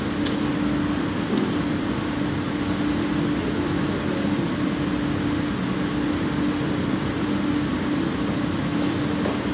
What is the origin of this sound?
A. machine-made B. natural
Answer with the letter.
B